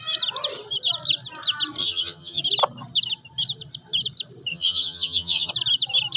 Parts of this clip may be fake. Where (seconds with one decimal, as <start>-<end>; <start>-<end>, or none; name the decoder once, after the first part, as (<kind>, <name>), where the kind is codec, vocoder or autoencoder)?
1.8-2.4 (vocoder, HiFi-GAN); 4.5-5.5